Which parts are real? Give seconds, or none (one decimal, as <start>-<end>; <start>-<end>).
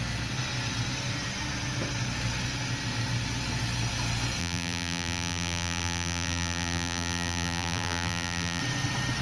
0.0-4.4; 8.6-9.2